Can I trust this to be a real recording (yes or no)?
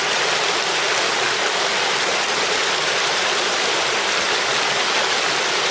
yes